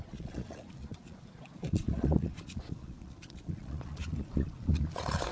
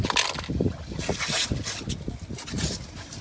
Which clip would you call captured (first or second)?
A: second